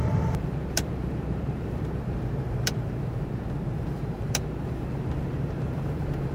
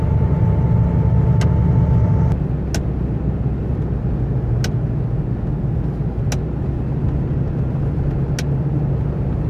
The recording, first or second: second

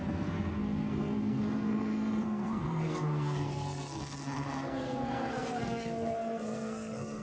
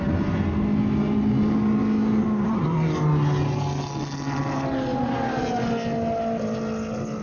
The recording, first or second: second